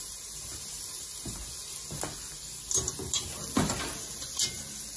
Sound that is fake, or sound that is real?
real